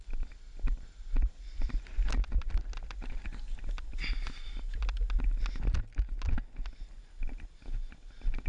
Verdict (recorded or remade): recorded